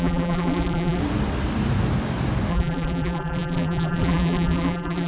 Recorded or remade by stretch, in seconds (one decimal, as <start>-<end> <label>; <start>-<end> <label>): 0.0-1.0 remade; 1.0-2.5 recorded; 2.5-5.1 remade